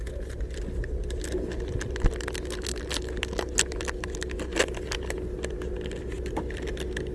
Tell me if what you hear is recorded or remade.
recorded